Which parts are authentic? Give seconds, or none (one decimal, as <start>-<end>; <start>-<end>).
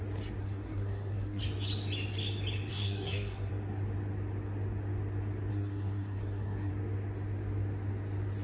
0.0-0.4; 1.4-2.7; 3.5-5.5; 6.7-8.4